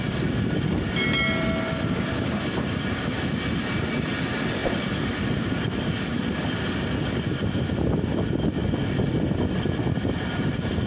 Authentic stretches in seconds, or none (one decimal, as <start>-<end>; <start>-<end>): 0.0-8.6; 9.8-10.9